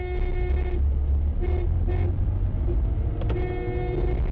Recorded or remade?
recorded